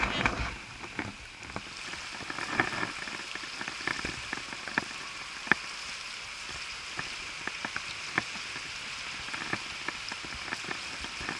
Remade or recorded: recorded